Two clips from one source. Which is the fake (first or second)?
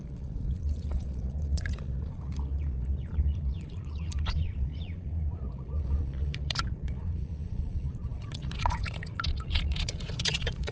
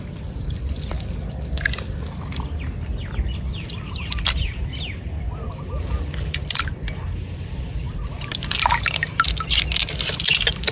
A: first